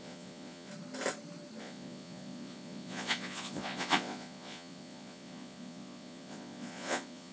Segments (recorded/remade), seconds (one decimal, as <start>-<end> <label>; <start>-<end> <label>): 0.0-0.7 remade; 0.7-1.6 recorded; 1.6-7.3 remade